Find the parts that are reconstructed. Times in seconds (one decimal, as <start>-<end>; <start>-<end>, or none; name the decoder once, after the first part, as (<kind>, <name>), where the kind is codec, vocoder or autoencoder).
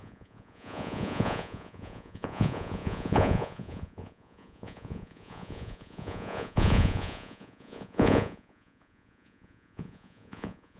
0.0-10.8 (vocoder, Vocos)